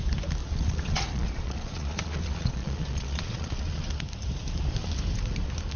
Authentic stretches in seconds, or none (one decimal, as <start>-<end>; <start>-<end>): 0.0-0.4; 3.9-5.8